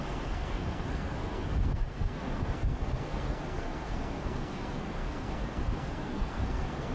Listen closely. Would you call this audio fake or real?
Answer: fake